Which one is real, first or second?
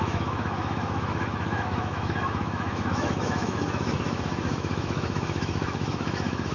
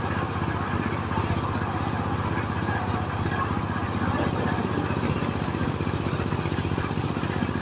second